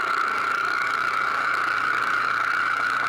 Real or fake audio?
fake